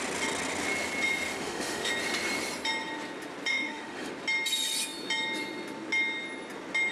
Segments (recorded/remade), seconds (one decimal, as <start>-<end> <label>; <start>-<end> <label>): 0.0-1.3 recorded; 1.3-1.9 remade; 1.9-3.5 recorded; 3.5-4.1 remade; 4.1-6.9 recorded